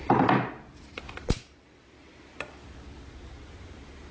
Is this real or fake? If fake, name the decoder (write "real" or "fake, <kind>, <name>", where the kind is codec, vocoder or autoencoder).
real